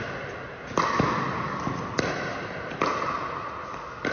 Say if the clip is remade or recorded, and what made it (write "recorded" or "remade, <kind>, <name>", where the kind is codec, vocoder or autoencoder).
recorded